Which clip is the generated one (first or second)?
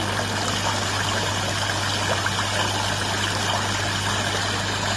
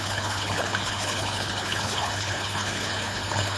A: second